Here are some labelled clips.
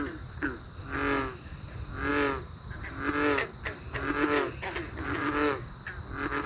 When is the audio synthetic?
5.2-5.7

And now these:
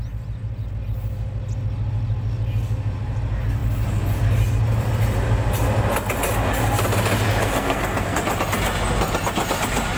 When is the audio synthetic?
7.4-8.2

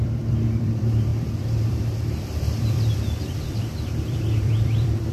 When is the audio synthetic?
0.0-5.1

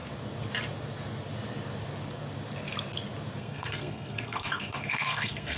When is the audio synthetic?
3.4-5.6

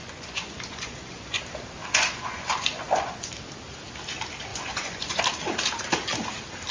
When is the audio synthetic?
0.0-1.4; 1.8-3.3; 4.5-5.2

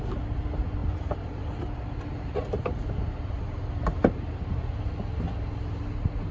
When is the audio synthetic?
0.8-4.6

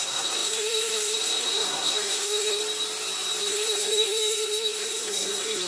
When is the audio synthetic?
0.0-2.6; 3.4-5.7

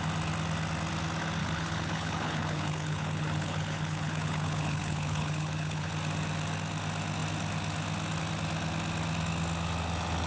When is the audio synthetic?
1.4-5.9